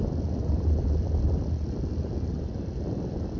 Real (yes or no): yes